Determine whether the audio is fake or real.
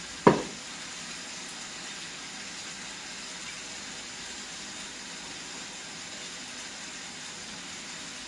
real